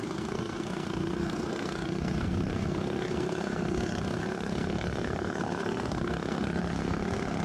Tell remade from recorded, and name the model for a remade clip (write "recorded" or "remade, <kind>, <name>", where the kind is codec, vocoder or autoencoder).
remade, codec, SNAC